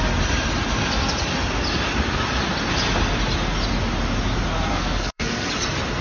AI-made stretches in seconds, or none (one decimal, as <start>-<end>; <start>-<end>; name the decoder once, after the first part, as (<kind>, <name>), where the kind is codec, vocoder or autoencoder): 4.7-5.5 (codec, SNAC)